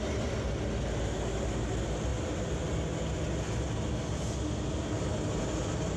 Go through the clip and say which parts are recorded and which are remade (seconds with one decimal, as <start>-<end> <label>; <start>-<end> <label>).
0.0-6.0 recorded